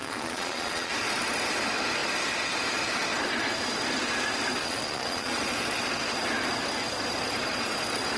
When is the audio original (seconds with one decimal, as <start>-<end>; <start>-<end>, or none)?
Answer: 0.9-4.6; 5.3-8.2